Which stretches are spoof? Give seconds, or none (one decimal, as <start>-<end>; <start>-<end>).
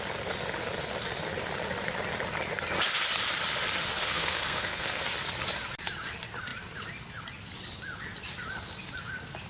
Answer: 4.0-5.0